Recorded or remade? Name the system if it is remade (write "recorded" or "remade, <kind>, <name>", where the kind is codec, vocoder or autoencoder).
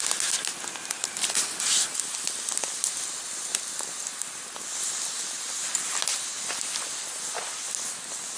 recorded